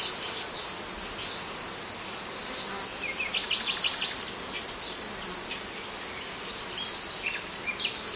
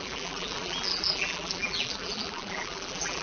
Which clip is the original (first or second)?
first